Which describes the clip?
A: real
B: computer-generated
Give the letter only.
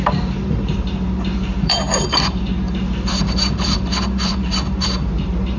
B